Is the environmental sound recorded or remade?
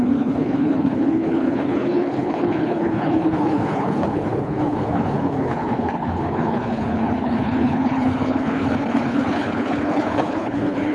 remade